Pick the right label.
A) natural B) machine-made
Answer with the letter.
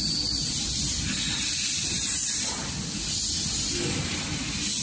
A